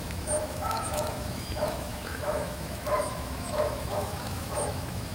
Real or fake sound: fake